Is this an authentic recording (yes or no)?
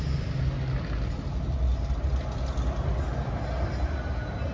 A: yes